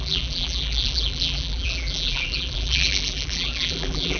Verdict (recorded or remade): remade